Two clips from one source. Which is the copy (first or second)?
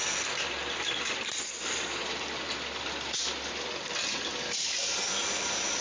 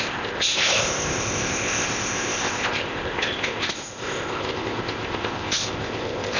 second